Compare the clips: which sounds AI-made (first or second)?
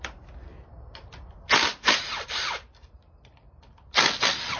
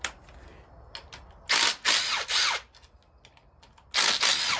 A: first